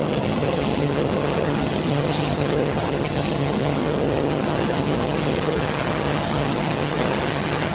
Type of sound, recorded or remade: remade